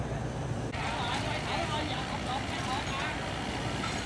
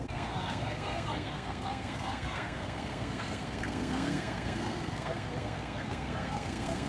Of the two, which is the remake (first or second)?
second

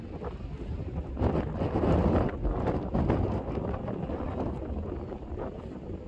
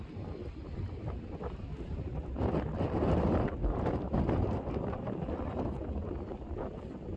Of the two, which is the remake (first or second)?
second